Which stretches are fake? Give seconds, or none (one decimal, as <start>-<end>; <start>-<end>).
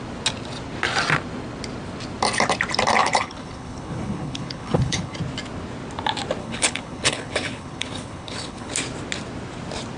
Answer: 3.0-5.2; 6.4-8.7